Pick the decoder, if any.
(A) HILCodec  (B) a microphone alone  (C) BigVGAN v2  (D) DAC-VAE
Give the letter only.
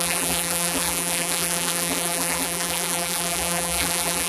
C